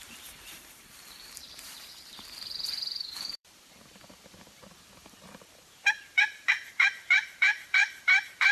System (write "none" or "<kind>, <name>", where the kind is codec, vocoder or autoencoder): vocoder, BigVGAN v2